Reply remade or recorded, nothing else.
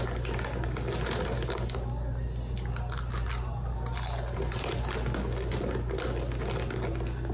recorded